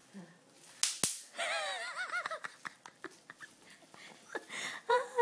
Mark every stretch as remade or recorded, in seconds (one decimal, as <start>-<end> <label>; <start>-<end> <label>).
0.0-3.0 recorded; 3.0-5.2 remade